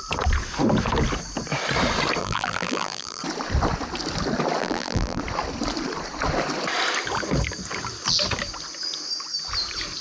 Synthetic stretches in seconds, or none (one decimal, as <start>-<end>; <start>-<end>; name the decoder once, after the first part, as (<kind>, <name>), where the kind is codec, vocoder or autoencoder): 2.2-3.2 (vocoder, BigVGAN v2); 4.6-5.2